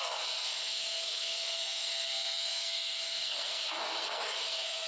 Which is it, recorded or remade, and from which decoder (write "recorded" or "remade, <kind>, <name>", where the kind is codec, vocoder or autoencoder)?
remade, codec, SNAC